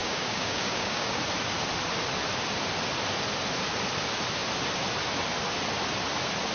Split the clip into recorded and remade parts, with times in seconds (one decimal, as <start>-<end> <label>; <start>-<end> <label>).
0.0-1.2 remade; 1.2-6.5 recorded